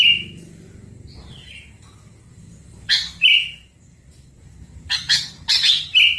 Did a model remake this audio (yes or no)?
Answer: yes